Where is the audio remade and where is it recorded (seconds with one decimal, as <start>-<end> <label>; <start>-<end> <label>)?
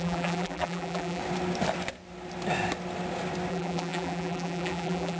0.0-1.2 remade; 1.2-3.5 recorded; 3.5-5.2 remade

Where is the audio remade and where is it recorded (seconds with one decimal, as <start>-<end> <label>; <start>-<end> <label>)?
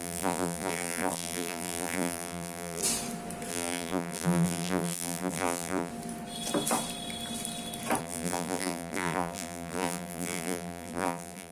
0.0-2.8 remade; 2.8-3.5 recorded; 3.5-5.9 remade; 5.9-8.0 recorded; 8.0-11.5 remade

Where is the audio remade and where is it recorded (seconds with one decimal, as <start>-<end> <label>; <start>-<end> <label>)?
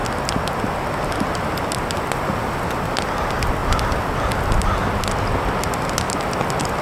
0.0-6.8 recorded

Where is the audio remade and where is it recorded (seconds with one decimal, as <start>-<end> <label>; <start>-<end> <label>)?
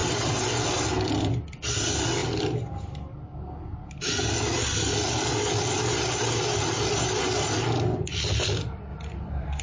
0.0-0.5 remade; 0.5-8.9 recorded; 8.9-9.6 remade